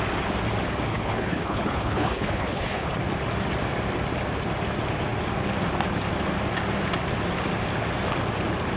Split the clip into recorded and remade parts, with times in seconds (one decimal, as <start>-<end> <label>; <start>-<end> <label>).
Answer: 0.0-0.9 recorded; 0.9-3.0 remade; 3.0-8.8 recorded